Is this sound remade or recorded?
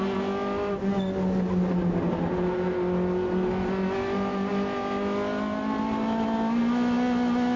recorded